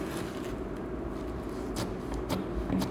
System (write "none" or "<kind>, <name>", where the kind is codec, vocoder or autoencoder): none